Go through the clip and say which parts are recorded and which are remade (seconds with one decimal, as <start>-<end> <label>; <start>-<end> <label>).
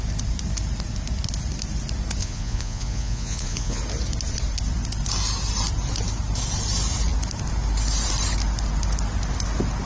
0.0-2.2 recorded; 2.2-3.8 remade; 3.8-9.9 recorded